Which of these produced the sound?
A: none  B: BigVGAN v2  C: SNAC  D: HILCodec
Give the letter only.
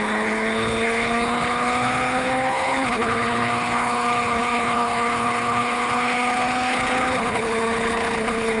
D